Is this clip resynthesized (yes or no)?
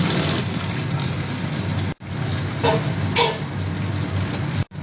no